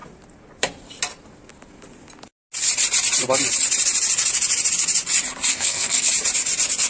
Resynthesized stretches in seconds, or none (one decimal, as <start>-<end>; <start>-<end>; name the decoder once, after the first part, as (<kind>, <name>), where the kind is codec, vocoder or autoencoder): 5.5-6.1 (codec, SNAC)